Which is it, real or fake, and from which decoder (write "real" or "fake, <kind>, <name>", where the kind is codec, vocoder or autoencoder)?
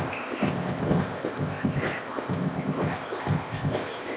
fake, codec, ZipCodec